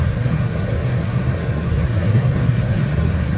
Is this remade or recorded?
remade